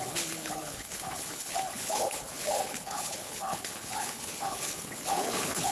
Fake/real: fake